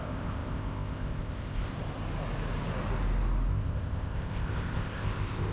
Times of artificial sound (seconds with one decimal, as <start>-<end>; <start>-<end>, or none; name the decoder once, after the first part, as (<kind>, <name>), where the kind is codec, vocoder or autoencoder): 0.0-1.7 (codec, ZipCodec); 3.5-5.5